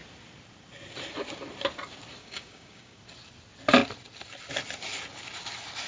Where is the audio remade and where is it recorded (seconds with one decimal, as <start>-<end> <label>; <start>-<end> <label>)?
0.0-2.2 recorded; 2.2-3.0 remade; 3.0-5.9 recorded